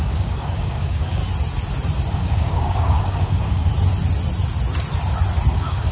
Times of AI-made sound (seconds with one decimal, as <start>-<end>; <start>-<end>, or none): 0.0-1.2; 2.1-3.7; 5.5-5.9